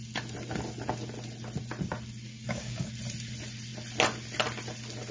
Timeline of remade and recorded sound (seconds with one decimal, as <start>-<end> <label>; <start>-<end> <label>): 0.0-2.3 recorded; 2.3-2.9 remade; 2.9-5.1 recorded